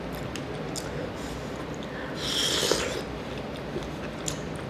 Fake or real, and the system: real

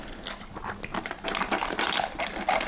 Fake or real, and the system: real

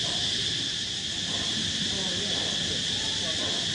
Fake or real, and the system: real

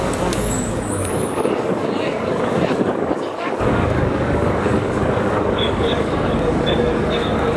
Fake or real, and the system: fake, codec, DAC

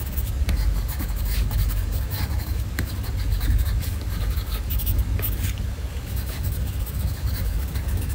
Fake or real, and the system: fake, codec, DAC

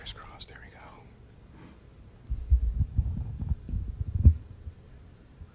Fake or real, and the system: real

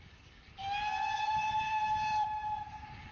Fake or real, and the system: real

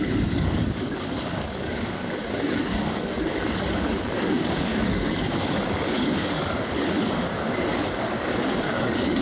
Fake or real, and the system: fake, codec, DAC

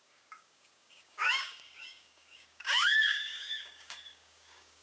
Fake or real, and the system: fake, codec, DAC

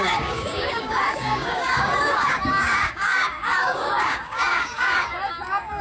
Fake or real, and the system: fake, codec, DAC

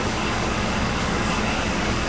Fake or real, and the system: fake, codec, DAC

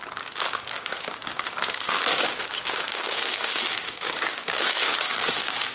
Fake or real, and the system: fake, codec, DAC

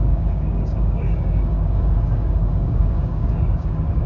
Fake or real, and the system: fake, codec, DAC